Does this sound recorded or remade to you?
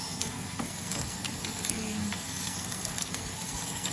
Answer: remade